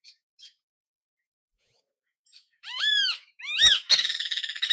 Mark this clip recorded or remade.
remade